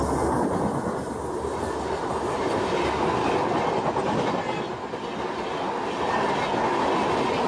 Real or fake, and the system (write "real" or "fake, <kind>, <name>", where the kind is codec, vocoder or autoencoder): real